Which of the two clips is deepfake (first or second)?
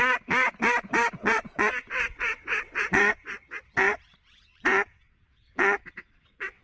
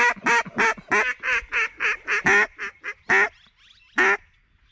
first